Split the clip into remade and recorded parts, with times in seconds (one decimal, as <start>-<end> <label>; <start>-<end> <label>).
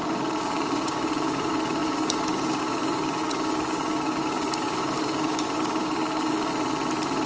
0.0-6.5 remade; 6.5-7.3 recorded